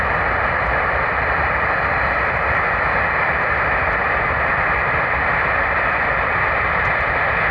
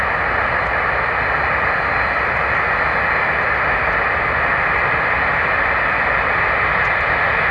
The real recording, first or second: second